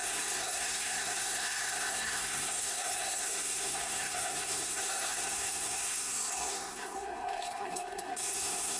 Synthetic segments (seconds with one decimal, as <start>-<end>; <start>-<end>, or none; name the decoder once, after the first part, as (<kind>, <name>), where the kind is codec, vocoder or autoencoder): 0.0-8.8 (codec, SNAC)